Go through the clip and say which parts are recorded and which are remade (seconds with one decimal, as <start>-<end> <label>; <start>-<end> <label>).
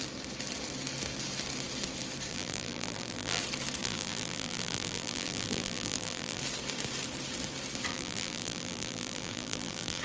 0.0-2.3 recorded; 2.3-3.4 remade; 3.4-3.8 recorded; 3.8-6.4 remade; 6.4-7.9 recorded; 7.9-10.0 remade